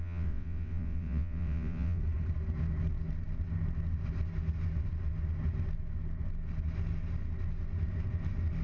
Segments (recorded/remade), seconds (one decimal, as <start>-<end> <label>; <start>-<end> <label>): 0.0-2.0 remade; 2.0-8.6 recorded